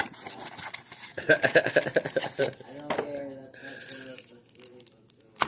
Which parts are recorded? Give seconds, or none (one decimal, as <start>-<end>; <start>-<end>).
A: 0.0-1.1; 1.6-5.5